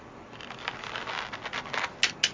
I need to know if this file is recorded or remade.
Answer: recorded